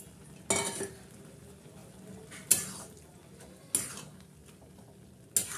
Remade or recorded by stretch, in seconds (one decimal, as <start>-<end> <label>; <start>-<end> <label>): 0.0-5.6 recorded